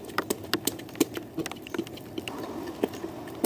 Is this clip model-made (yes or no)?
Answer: no